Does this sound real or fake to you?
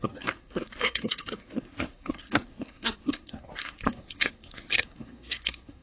fake